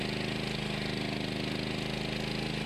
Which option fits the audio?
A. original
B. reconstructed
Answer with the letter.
A